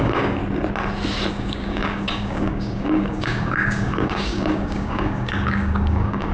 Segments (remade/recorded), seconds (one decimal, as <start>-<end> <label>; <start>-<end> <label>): 0.0-0.4 remade; 0.4-1.3 recorded; 1.3-6.3 remade